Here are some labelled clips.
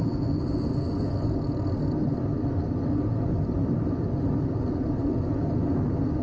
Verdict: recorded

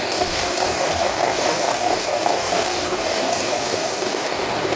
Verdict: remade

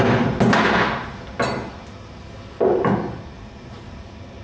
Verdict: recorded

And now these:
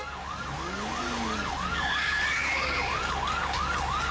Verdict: remade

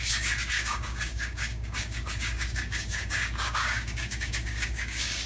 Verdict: remade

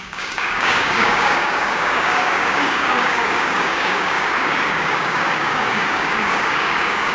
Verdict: remade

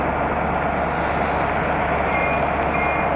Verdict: recorded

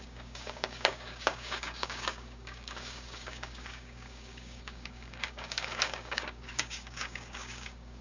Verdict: remade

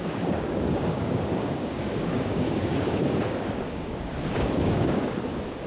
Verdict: remade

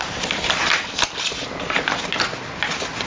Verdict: recorded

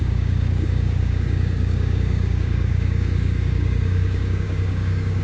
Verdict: remade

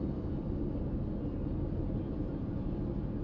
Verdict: recorded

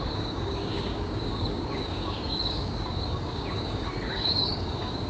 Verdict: remade